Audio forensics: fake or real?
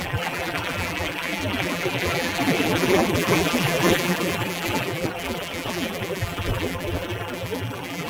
fake